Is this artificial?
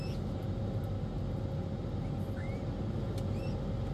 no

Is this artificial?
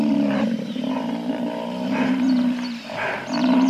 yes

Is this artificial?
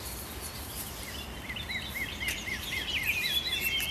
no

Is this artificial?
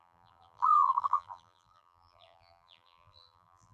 yes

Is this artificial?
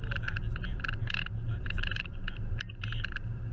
yes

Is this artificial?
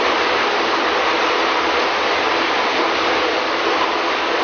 yes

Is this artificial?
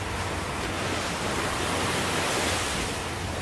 no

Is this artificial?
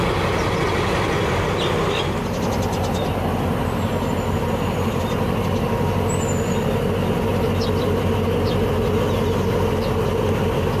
no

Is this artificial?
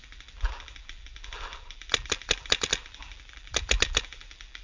yes